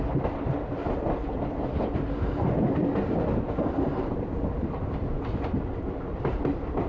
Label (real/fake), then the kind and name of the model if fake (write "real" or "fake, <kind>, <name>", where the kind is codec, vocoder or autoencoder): real